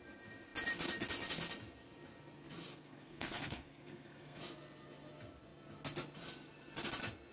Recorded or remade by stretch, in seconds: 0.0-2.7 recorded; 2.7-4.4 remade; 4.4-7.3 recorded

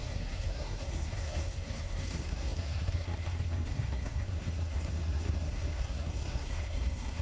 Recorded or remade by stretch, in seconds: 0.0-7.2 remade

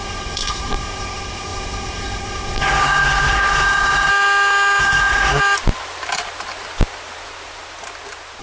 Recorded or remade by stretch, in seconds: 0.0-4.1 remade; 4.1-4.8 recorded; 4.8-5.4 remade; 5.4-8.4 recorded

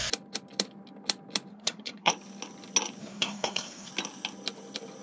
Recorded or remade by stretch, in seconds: 0.0-1.5 recorded; 1.5-2.1 remade; 2.1-3.0 recorded; 3.0-3.9 remade; 3.9-5.0 recorded